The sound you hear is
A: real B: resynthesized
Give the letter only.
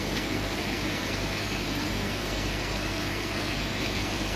B